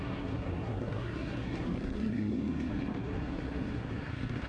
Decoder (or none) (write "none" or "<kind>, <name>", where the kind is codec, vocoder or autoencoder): codec, SNAC